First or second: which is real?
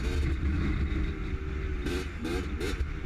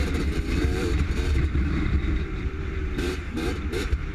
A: first